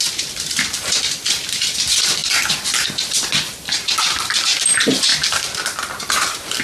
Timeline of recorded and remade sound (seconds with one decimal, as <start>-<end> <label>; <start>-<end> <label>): 0.0-5.1 recorded; 5.1-5.9 remade; 5.9-6.6 recorded